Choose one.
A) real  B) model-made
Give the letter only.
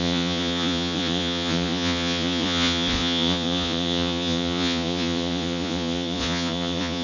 B